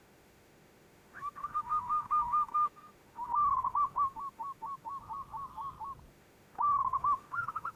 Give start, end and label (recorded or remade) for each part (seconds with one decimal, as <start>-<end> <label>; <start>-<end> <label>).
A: 0.0-5.0 remade; 5.0-6.1 recorded; 6.1-7.8 remade